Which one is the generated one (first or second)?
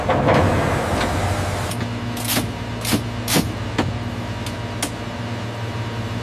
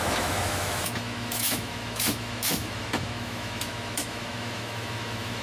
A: second